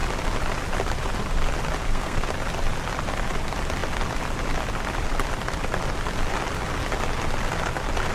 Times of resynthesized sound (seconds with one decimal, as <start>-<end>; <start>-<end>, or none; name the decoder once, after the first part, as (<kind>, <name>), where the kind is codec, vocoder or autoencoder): 1.8-2.3 (codec, SNAC)